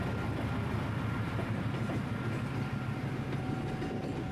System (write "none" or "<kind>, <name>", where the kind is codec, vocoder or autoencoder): none